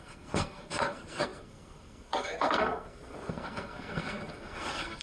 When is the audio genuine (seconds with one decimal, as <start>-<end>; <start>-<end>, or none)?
none